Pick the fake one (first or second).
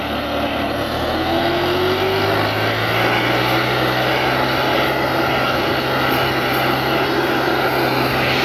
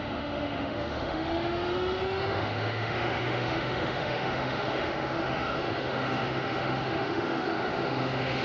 second